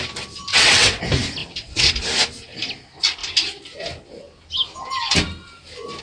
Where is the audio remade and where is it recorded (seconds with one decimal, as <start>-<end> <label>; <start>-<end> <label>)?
0.0-0.5 recorded; 0.5-1.0 remade; 1.0-1.4 recorded; 1.4-1.9 remade; 1.9-6.0 recorded